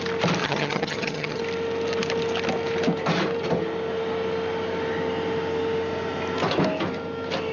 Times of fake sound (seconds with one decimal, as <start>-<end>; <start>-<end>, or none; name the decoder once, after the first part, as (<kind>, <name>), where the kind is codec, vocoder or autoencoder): 0.4-1.4 (vocoder, HiFi-GAN)

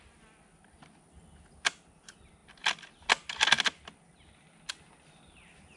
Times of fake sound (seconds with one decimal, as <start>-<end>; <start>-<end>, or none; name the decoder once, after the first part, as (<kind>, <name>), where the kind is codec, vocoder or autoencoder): none

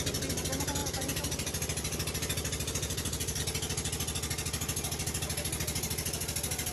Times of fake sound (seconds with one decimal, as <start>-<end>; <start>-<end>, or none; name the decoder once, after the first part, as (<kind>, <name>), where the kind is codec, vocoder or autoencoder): 0.8-3.4 (vocoder, BigVGAN v2)

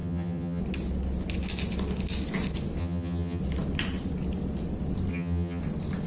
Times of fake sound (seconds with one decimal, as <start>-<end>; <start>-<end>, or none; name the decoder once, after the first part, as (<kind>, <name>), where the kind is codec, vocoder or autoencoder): 0.0-0.6 (vocoder, HiFi-GAN); 2.8-3.4; 5.1-5.6

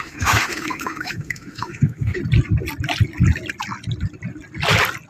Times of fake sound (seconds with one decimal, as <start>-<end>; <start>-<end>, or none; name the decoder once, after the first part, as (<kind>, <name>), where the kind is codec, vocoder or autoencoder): 0.0-2.2 (autoencoder, DAC-VAE)

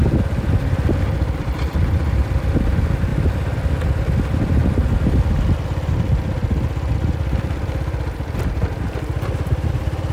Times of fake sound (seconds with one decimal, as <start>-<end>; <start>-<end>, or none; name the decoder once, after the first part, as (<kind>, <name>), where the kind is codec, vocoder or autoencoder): 0.0-3.1 (vocoder, BigVGAN v2); 3.8-6.4; 7.4-10.1